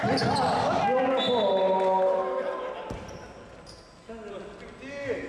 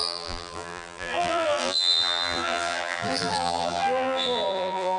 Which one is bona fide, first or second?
first